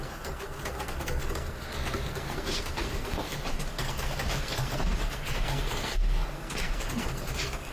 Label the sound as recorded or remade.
remade